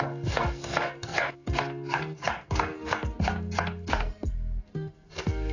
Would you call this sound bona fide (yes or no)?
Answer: no